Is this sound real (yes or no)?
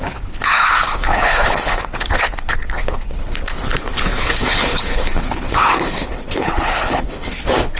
no